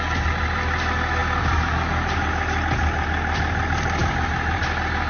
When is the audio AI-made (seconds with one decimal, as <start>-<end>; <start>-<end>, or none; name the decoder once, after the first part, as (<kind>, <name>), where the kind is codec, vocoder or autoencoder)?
none